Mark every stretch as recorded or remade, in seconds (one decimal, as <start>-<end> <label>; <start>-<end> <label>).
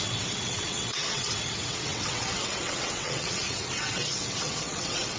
0.0-5.2 remade